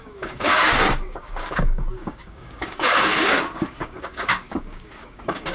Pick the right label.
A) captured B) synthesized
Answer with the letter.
B